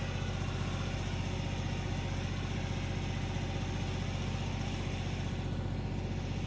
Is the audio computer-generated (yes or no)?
no